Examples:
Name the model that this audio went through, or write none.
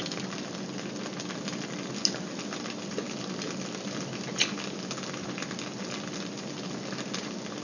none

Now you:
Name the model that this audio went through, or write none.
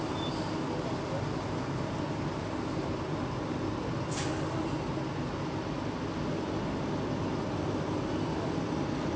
none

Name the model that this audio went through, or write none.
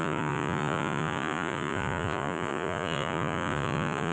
vocoder, Vocos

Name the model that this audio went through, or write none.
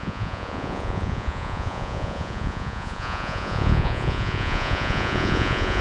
vocoder, Vocos